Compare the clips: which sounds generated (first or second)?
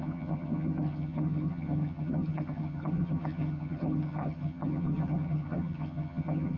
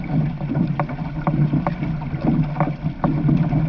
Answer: first